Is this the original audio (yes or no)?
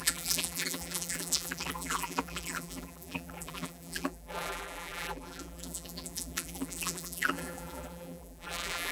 no